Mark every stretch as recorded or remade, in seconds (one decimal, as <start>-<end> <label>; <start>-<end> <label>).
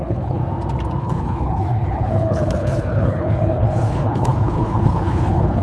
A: 0.0-0.4 remade; 0.4-1.0 recorded; 1.0-5.6 remade